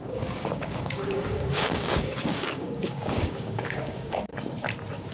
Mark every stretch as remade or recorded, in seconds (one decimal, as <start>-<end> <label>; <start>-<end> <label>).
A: 0.0-4.3 remade; 4.3-5.1 recorded